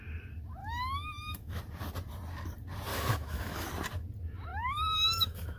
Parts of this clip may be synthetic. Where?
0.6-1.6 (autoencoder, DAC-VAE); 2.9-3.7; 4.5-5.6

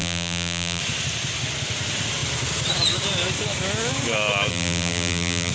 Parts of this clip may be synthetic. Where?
0.0-0.8 (vocoder, BigVGAN v2); 4.5-5.5

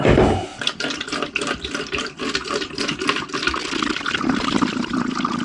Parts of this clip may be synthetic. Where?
0.5-2.0 (vocoder, BigVGAN v2); 3.6-4.2

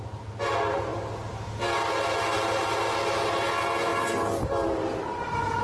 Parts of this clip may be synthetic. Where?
none

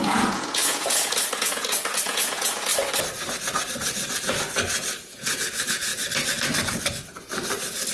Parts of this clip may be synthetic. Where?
0.0-2.7 (vocoder, Vocos); 5.0-5.9

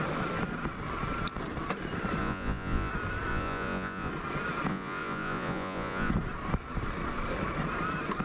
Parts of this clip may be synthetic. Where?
2.2-2.9 (vocoder, Vocos); 3.3-4.1; 4.7-6.1

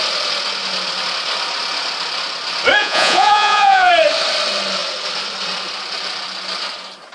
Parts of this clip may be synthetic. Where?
2.8-3.9 (vocoder, Vocos)

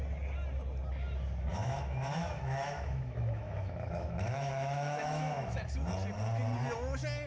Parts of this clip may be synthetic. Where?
1.5-5.9 (autoencoder, DAC-VAE)